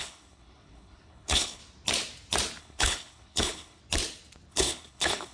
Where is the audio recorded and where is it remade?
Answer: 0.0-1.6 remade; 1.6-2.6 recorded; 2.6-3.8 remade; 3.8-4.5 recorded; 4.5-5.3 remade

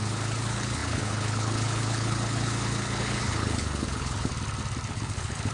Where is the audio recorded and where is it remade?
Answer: 0.0-4.3 remade; 4.3-4.9 recorded; 4.9-5.5 remade

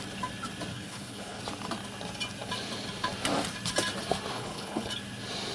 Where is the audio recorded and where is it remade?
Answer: 0.0-0.7 recorded; 0.7-1.4 remade; 1.4-4.3 recorded; 4.3-4.9 remade; 4.9-5.5 recorded